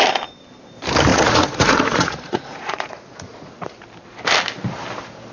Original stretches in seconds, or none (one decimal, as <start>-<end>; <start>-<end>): 0.0-1.1; 3.5-5.3